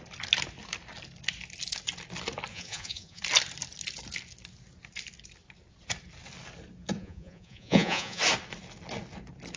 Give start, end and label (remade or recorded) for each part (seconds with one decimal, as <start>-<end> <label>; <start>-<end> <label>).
0.0-2.5 recorded; 2.5-3.2 remade; 3.2-7.0 recorded; 7.0-8.2 remade; 8.2-9.6 recorded

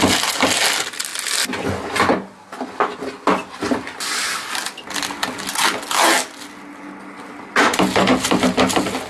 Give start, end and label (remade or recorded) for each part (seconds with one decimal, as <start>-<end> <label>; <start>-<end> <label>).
0.0-9.1 recorded

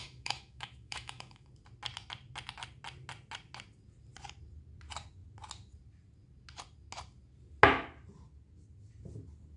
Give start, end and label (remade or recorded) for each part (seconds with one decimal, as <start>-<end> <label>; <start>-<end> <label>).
0.0-1.5 remade; 1.5-9.6 recorded

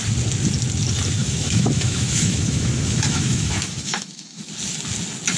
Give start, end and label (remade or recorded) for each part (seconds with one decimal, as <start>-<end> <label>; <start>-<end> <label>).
0.0-1.2 recorded; 1.2-4.4 remade; 4.4-5.4 recorded